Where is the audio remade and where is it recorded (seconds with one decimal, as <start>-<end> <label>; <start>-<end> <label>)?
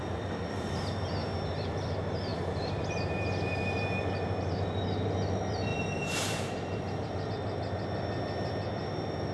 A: 0.0-2.3 recorded; 2.3-4.5 remade; 4.5-5.7 recorded; 5.7-7.3 remade; 7.3-9.3 recorded